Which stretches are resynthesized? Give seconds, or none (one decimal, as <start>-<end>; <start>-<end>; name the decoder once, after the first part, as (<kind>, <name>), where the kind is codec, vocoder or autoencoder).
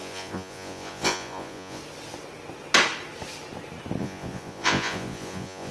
0.0-1.8 (vocoder, Vocos); 4.0-5.7